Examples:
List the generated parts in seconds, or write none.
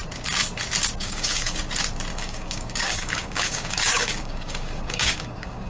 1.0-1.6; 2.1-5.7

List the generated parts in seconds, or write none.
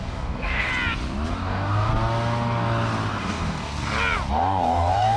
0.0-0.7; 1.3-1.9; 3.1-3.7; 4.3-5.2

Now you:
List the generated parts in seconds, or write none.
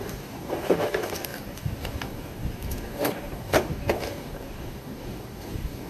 0.0-5.9